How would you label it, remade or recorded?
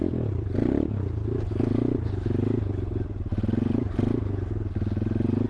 recorded